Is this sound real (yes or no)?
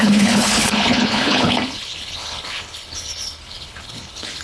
no